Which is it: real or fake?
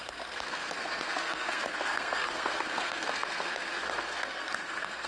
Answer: fake